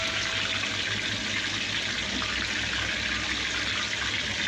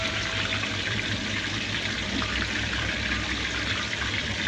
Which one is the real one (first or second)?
first